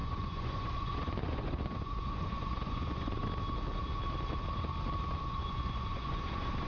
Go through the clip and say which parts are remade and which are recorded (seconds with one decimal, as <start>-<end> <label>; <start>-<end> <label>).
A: 0.0-3.2 remade; 3.2-5.2 recorded; 5.2-6.7 remade